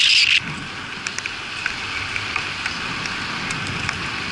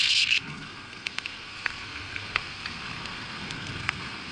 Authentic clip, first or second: first